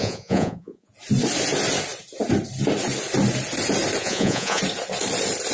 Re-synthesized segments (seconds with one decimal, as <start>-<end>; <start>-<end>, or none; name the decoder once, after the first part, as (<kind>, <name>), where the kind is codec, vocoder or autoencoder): 0.0-0.9 (vocoder, Vocos); 4.0-4.6